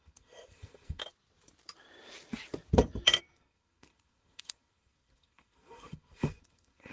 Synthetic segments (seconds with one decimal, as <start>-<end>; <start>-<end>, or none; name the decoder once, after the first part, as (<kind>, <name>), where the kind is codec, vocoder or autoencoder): 0.0-1.0 (codec, SNAC); 3.2-6.9